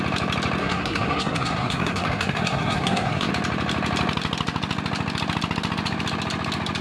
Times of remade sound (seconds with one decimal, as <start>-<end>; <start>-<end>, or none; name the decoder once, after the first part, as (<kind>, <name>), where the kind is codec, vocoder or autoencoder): 0.6-3.3 (codec, SNAC)